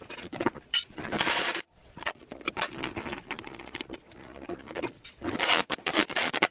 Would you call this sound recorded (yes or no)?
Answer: no